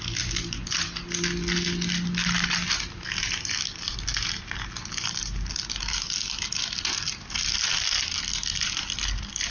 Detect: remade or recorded recorded